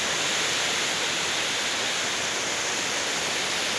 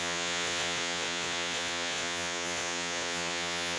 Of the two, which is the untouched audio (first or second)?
first